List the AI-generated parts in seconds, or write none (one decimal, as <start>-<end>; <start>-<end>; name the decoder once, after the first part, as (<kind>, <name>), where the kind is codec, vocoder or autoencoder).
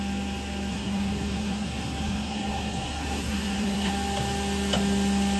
0.7-3.9 (codec, SNAC)